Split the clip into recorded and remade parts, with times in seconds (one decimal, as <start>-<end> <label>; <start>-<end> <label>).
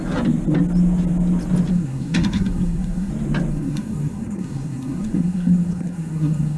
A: 0.0-1.7 recorded; 1.7-3.1 remade; 3.1-3.5 recorded; 3.5-6.6 remade